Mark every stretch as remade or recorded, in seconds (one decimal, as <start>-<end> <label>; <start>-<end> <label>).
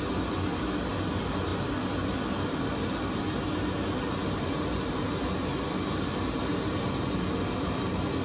0.0-8.2 recorded